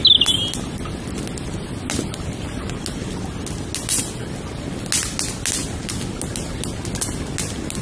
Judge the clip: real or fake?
real